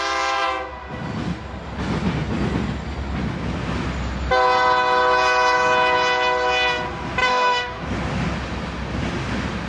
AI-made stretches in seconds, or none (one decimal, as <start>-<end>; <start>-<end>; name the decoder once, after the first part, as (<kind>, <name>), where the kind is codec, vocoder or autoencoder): 7.2-7.8 (autoencoder, DAC-VAE)